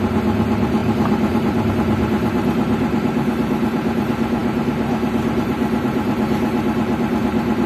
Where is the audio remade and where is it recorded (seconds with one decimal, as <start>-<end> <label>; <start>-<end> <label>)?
0.0-7.7 remade